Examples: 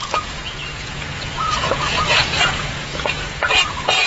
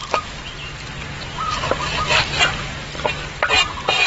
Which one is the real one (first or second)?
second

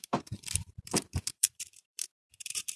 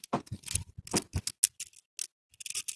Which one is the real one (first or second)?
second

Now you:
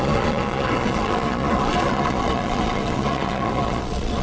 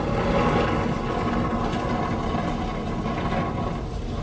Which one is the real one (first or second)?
second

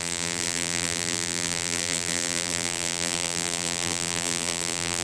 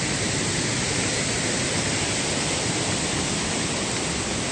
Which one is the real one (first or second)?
second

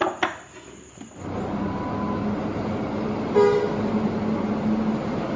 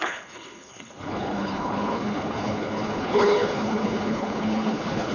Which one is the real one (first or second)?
first